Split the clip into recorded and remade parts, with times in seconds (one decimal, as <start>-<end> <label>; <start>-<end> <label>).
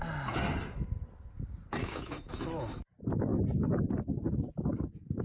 0.0-1.8 recorded; 1.8-2.9 remade; 2.9-5.2 recorded